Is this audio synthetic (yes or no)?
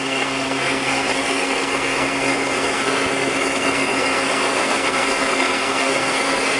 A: yes